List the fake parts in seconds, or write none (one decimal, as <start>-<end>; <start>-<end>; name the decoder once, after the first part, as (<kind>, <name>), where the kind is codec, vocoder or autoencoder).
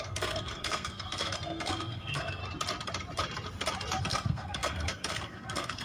0.0-2.4 (codec, SNAC); 4.0-5.8